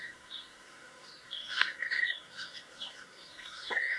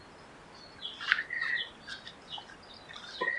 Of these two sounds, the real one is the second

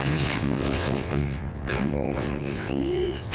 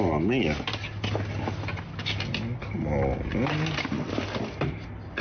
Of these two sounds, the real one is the second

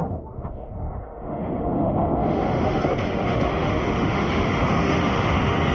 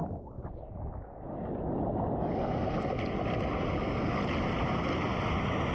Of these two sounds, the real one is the second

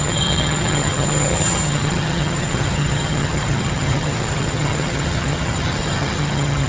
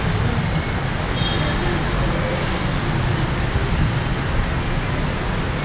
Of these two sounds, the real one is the second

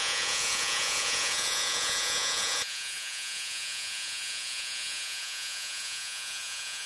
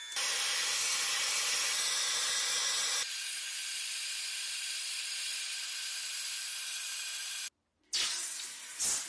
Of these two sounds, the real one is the second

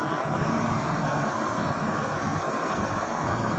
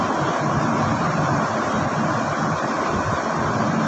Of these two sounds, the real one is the second